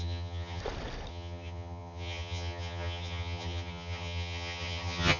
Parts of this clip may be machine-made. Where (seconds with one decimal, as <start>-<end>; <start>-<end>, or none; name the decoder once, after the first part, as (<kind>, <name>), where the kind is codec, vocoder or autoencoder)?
0.0-0.6 (vocoder, HiFi-GAN); 1.1-5.2